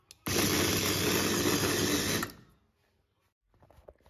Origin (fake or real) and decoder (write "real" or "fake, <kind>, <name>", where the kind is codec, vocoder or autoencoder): real